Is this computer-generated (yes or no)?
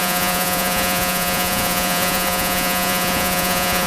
yes